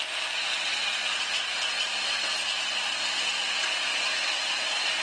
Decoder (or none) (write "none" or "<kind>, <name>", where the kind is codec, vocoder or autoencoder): none